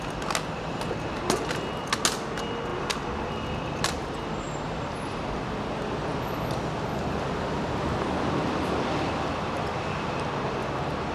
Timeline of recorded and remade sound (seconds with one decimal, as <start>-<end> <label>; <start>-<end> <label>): 0.0-11.1 recorded